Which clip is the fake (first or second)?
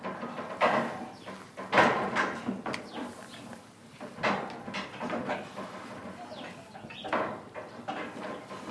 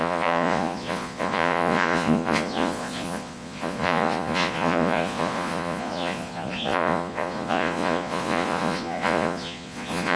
second